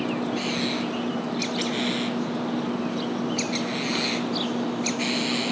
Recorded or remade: recorded